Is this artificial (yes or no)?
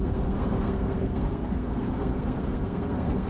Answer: yes